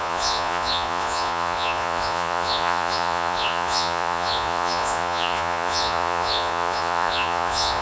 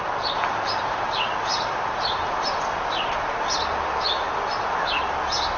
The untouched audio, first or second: second